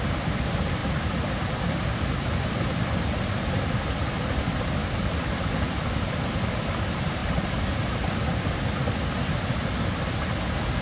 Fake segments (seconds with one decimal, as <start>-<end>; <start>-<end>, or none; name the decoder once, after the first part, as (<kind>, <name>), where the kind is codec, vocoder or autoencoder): 0.8-3.0 (vocoder, BigVGAN v2)